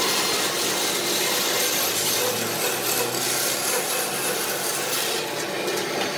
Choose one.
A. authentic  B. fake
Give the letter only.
A